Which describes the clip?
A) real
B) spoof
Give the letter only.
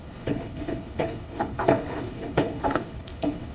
B